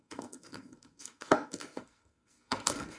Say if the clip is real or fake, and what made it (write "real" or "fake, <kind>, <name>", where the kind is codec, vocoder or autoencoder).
fake, codec, SNAC